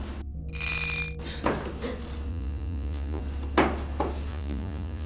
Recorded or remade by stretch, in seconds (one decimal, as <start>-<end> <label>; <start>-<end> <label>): 0.0-2.3 recorded; 2.3-3.2 remade; 3.2-4.3 recorded; 4.3-5.1 remade